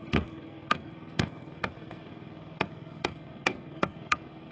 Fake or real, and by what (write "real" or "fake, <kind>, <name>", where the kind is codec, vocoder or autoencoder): fake, codec, SNAC